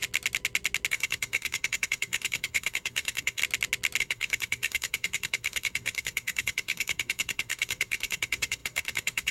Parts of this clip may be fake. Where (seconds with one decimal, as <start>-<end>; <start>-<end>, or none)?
0.9-3.4; 4.0-9.3